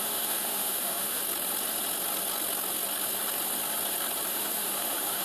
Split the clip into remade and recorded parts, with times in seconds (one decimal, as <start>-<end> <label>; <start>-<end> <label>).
0.0-1.2 remade; 1.2-4.3 recorded; 4.3-5.2 remade